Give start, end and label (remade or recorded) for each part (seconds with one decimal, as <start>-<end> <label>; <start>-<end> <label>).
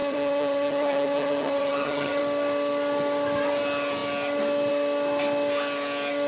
0.0-2.2 remade; 2.2-6.3 recorded